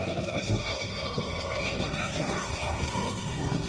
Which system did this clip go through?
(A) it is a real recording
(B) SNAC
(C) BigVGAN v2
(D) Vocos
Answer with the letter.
B